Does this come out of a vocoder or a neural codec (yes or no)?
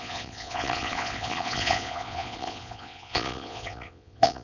yes